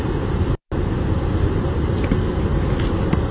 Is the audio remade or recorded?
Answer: recorded